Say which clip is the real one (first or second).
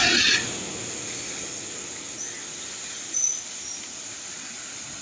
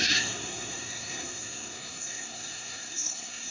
first